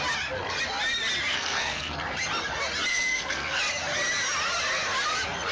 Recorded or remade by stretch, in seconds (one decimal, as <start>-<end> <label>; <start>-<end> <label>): 0.0-1.3 recorded; 1.3-2.0 remade; 2.0-2.9 recorded; 2.9-3.6 remade; 3.6-5.5 recorded